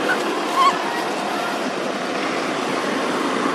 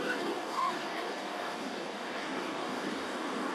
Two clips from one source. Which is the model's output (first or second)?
second